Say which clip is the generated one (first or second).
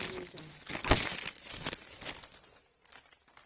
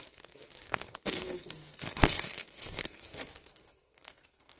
second